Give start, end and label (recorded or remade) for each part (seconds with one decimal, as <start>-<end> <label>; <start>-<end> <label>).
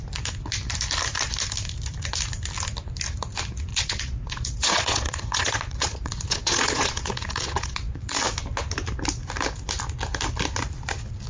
0.0-3.7 recorded; 3.7-8.2 remade; 8.2-11.3 recorded